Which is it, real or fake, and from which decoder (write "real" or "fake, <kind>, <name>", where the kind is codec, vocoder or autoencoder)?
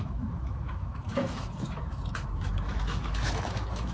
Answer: fake, autoencoder, DAC-VAE